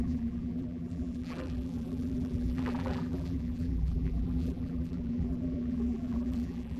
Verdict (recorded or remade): remade